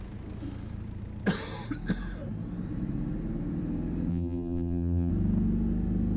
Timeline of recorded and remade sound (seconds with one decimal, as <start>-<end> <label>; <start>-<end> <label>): 0.0-4.1 recorded; 4.1-5.1 remade; 5.1-6.2 recorded